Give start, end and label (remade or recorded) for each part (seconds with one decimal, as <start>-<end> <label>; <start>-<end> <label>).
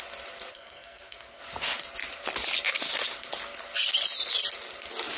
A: 0.0-0.5 recorded; 0.5-1.4 remade; 1.4-5.2 recorded